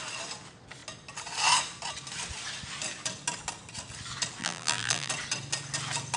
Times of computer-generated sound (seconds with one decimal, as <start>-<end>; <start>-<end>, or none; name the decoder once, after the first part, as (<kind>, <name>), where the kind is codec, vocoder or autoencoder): 4.4-5.1 (vocoder, BigVGAN v2)